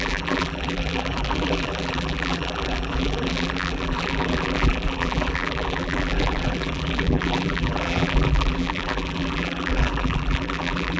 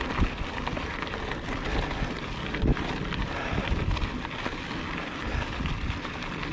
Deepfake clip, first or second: first